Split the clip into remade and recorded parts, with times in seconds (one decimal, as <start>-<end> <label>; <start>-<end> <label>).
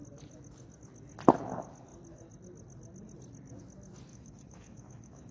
0.0-4.1 recorded; 4.1-5.3 remade